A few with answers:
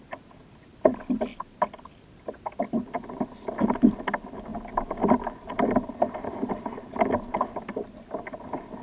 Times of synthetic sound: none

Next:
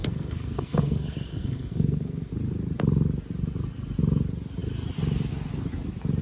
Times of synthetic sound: 0.0-2.3 (codec, SNAC)

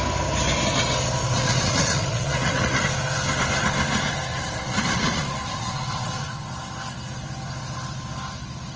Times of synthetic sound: 1.2-2.8 (vocoder, Vocos); 4.3-6.4